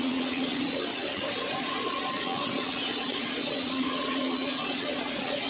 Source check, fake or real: fake